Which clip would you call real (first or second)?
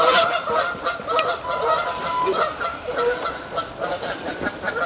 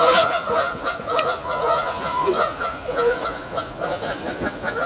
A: first